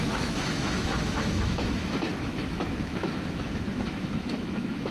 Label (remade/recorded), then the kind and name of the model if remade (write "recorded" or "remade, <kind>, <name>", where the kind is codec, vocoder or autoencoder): remade, autoencoder, DAC-VAE